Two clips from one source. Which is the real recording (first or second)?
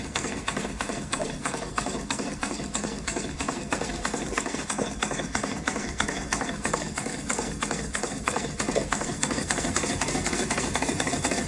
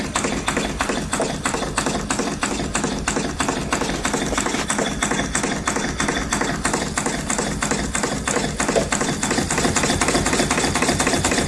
second